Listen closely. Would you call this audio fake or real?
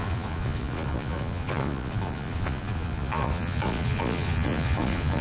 fake